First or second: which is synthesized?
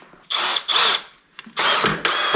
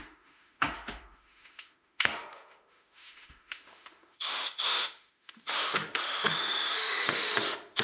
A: second